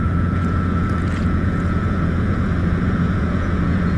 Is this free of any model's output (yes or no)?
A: no